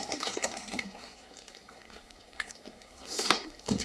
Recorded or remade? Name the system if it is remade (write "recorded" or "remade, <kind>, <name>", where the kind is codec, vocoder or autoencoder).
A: remade, codec, SNAC